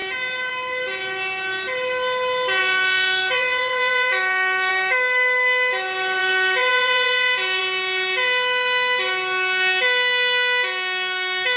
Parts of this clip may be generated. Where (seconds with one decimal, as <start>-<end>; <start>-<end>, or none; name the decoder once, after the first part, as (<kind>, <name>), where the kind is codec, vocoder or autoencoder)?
2.6-4.7 (vocoder, Vocos); 6.2-7.6